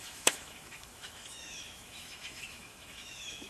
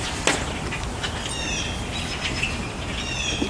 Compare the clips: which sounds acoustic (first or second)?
second